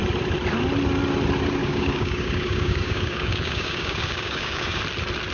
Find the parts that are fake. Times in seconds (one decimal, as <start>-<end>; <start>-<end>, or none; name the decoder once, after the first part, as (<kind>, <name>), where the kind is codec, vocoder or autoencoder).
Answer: 1.6-4.8 (codec, DAC)